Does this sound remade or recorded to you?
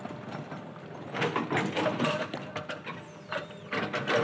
remade